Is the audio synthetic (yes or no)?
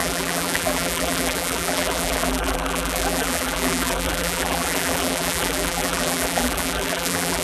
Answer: yes